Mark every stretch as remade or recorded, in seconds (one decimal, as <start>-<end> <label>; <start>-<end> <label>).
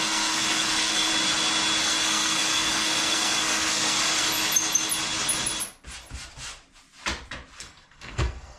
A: 0.0-1.1 remade; 1.1-1.8 recorded; 1.8-4.3 remade; 4.3-7.6 recorded; 7.6-8.6 remade